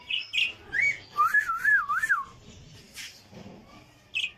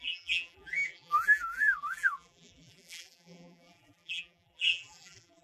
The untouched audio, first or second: first